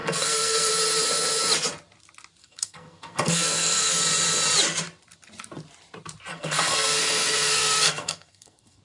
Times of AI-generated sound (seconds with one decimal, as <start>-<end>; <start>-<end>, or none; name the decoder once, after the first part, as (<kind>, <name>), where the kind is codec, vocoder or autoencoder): 0.0-0.7 (codec, SNAC); 2.4-4.0; 6.3-8.8

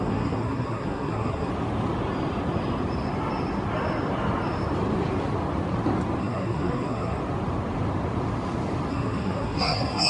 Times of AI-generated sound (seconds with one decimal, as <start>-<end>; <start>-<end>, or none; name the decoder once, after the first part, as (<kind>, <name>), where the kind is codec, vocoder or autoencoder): 0.0-1.5 (codec, SNAC); 6.2-7.2; 8.9-10.1

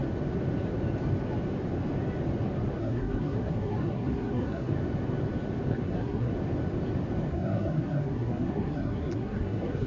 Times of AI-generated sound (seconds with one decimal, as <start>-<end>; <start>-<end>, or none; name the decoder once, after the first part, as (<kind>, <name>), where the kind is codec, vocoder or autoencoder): 2.8-4.7 (codec, SNAC); 5.7-6.3; 7.3-9.9

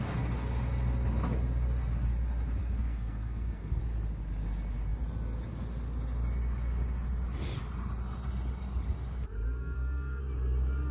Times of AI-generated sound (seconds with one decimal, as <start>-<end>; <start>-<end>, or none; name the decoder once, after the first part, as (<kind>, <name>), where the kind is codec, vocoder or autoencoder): 2.6-3.8 (codec, SNAC); 9.6-10.2

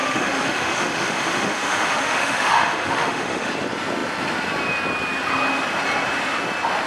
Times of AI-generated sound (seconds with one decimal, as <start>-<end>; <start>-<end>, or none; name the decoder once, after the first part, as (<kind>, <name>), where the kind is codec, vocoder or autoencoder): 0.0-3.5 (autoencoder, DAC-VAE)

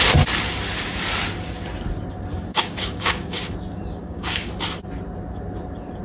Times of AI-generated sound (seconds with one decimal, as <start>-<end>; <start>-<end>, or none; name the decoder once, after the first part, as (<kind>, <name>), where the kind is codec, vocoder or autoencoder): 2.5-3.5 (codec, DAC); 4.0-4.5